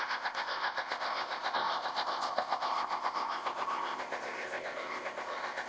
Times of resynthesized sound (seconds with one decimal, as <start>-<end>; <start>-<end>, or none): 0.0-5.7